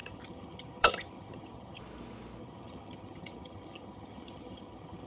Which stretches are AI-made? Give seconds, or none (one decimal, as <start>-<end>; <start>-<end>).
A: 0.0-1.8; 2.4-5.1